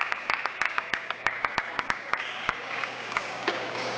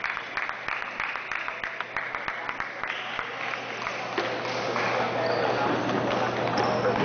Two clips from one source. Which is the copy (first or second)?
first